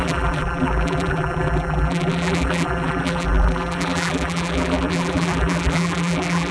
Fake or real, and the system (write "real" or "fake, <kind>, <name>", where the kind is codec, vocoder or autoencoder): fake, vocoder, BigVGAN v2